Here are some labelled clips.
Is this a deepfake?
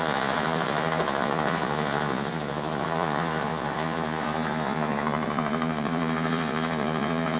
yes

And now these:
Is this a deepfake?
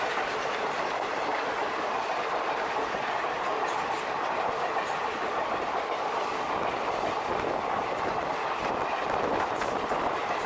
yes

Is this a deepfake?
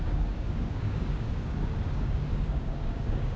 yes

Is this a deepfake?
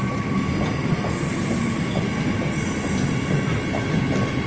no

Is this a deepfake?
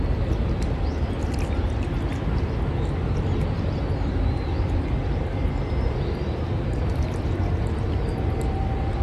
no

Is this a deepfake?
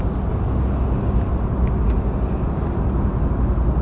no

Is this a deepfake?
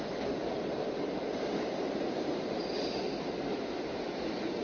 no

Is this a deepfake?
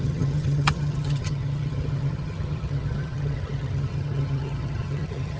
yes